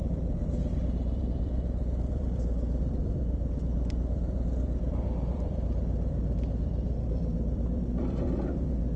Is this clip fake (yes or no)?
yes